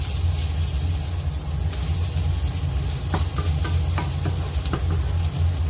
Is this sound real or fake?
real